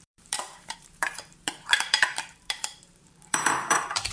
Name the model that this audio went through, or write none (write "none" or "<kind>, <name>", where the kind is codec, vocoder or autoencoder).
vocoder, BigVGAN v2